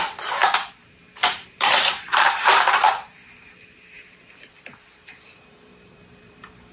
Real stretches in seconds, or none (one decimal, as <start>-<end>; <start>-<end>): none